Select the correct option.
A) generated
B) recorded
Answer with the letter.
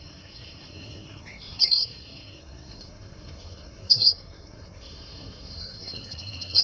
A